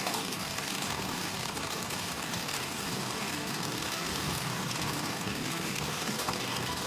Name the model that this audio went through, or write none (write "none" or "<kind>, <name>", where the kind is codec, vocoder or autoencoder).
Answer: codec, DAC